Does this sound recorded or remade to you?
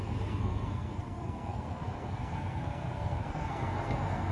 remade